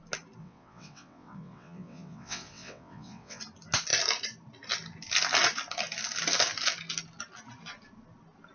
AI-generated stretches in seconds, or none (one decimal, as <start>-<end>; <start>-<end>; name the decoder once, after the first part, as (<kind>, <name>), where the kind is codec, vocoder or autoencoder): 0.4-3.4 (vocoder, WaveNeXt)

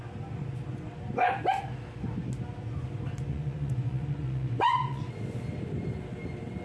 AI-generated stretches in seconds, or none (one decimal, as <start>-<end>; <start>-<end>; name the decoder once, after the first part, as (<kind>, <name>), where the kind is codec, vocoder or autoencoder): 3.3-5.1 (vocoder, Vocos)

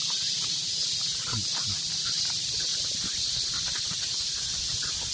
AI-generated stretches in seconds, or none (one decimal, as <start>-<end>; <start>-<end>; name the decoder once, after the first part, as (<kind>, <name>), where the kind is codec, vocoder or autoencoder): none

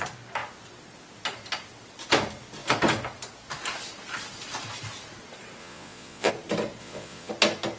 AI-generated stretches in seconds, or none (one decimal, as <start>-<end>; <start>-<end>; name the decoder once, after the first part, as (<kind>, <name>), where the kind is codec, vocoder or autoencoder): 5.6-6.3 (vocoder, Vocos); 6.8-7.3